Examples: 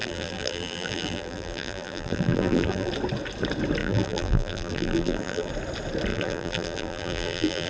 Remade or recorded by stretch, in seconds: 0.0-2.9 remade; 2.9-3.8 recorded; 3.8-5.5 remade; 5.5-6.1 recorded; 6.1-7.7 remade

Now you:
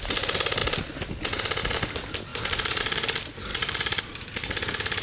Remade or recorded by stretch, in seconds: 0.0-3.5 recorded; 3.5-4.0 remade; 4.0-5.0 recorded

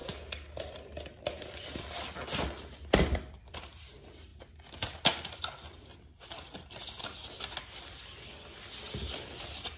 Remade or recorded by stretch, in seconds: 0.0-9.8 recorded